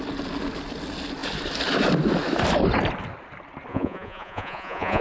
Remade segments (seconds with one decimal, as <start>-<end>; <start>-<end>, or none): 3.7-5.0